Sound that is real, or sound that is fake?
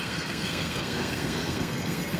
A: fake